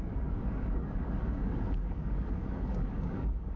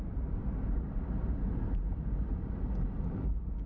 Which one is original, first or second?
second